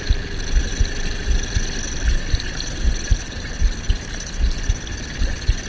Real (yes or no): yes